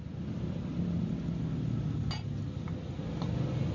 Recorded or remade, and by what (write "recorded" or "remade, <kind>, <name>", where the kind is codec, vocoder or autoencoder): recorded